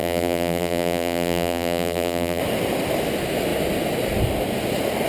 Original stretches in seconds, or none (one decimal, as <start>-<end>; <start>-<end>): 2.4-5.1